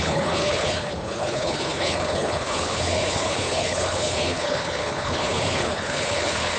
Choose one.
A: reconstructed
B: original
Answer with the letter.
A